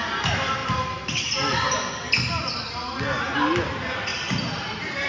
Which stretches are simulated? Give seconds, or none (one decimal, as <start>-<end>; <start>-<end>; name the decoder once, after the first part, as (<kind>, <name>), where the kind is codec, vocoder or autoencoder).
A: none